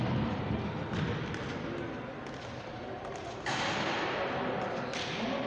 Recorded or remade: recorded